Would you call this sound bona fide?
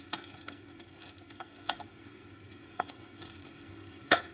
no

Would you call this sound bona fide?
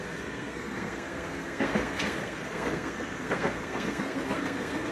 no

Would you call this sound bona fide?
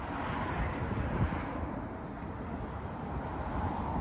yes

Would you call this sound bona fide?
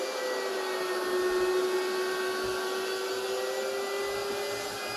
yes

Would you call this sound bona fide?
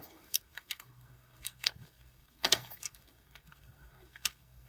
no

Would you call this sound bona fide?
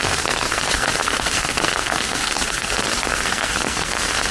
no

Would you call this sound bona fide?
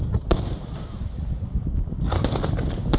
yes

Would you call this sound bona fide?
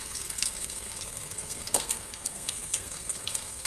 no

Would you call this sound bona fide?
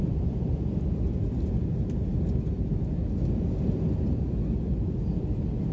yes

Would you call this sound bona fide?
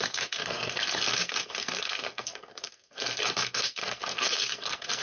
no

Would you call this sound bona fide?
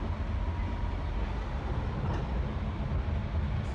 yes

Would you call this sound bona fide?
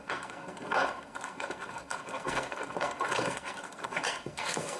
no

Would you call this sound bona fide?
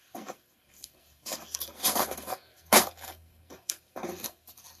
no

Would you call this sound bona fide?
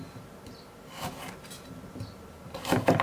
yes